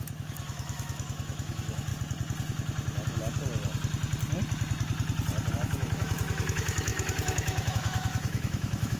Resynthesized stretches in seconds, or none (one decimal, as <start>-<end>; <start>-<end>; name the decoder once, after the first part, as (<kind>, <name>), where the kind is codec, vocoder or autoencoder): 0.0-1.9 (autoencoder, DAC-VAE); 5.5-9.0